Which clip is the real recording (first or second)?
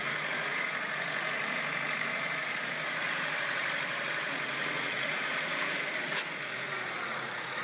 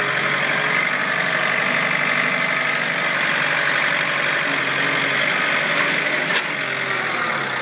second